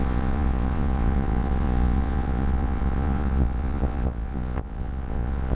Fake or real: fake